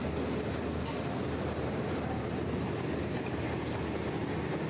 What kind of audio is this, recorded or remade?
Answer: recorded